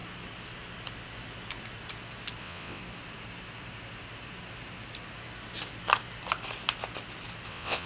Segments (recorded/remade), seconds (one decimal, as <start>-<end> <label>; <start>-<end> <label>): 0.0-2.4 recorded; 2.4-2.8 remade; 2.8-7.5 recorded; 7.5-7.9 remade